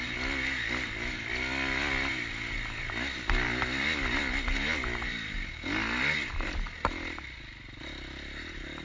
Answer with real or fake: real